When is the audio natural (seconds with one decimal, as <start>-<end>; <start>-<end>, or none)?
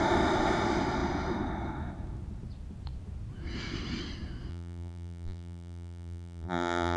0.0-4.5